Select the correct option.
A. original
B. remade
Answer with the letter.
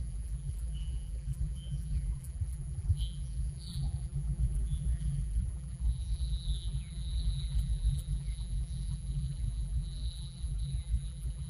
B